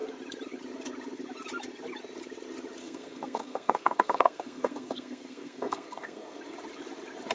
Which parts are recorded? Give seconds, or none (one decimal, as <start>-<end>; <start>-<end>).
0.0-2.8; 6.4-7.3